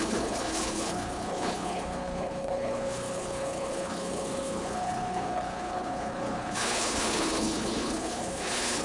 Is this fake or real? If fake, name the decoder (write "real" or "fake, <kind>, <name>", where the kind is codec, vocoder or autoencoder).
fake, codec, HILCodec